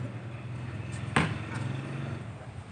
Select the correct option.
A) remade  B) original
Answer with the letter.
B